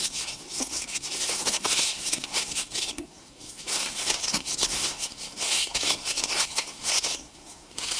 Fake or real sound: fake